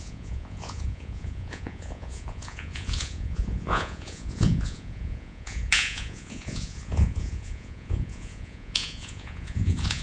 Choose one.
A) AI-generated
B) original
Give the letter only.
A